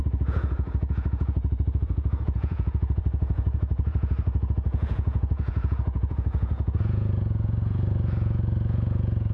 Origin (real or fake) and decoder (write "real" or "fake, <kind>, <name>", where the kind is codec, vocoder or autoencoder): fake, vocoder, Vocos